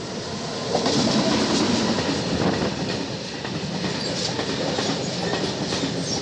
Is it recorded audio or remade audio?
recorded